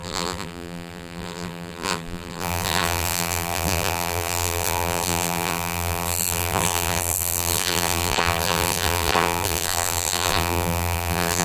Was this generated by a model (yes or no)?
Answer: yes